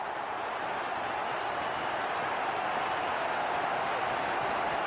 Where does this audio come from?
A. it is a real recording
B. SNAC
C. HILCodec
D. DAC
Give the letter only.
A